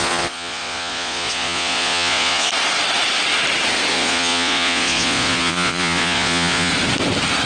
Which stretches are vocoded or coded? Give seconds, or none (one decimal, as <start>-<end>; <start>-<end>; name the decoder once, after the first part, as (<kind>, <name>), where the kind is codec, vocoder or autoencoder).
0.0-2.5 (vocoder, Vocos); 3.9-6.7